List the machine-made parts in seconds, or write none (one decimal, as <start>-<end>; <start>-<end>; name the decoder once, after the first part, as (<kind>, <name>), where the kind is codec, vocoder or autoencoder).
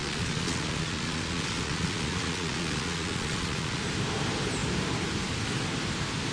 0.0-3.8 (vocoder, Vocos)